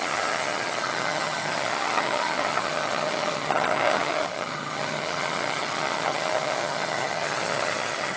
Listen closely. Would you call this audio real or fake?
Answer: fake